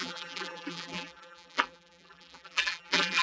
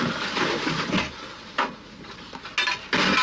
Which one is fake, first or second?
first